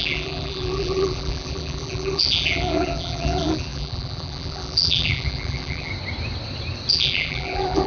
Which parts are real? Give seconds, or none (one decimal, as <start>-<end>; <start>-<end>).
5.9-6.9